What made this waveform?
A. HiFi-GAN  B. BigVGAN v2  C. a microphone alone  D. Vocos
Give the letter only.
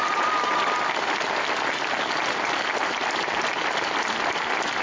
C